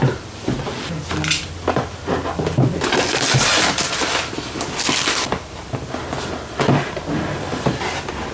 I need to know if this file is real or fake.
fake